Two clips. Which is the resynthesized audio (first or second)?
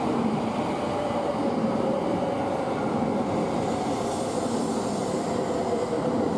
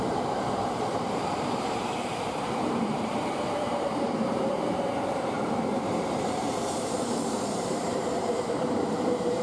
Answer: second